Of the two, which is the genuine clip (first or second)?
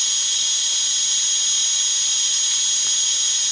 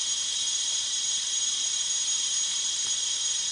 first